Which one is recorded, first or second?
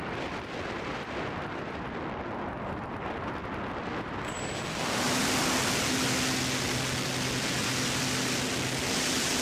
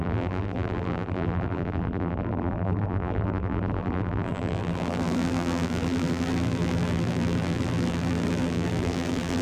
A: first